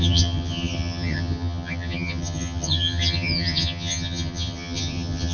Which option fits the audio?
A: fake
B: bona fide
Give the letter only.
A